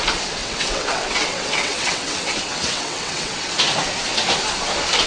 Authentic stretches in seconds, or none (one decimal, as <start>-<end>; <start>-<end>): 0.0-0.4; 3.5-5.1